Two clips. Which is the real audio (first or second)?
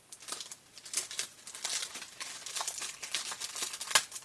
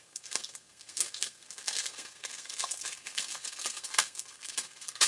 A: first